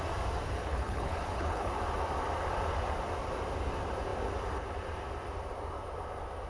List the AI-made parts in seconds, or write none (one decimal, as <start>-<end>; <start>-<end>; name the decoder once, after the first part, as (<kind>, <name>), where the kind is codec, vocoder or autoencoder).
0.6-1.7 (codec, HILCodec)